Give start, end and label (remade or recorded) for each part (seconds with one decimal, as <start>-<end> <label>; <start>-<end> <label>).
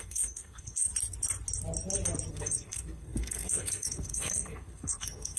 0.0-0.9 remade; 0.9-2.3 recorded; 2.3-5.4 remade